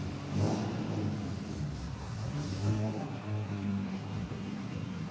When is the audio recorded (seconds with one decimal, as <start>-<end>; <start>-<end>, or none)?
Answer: 0.0-1.8